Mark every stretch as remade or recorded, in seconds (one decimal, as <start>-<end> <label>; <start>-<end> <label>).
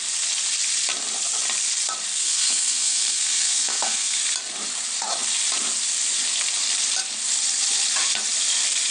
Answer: 0.0-2.1 recorded; 2.1-4.2 remade; 4.2-8.9 recorded